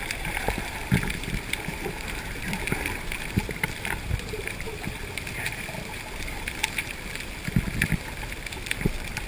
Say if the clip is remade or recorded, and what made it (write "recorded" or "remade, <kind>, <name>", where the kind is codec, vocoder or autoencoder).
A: remade, vocoder, BigVGAN v2